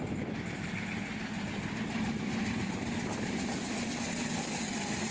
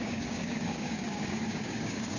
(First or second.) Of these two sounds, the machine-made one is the second